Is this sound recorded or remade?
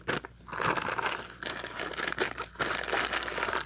recorded